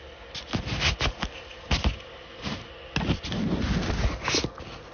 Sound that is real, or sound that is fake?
real